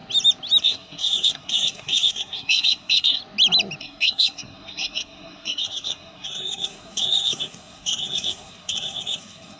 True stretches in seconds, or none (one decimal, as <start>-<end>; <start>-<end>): 0.0-0.6; 3.2-3.8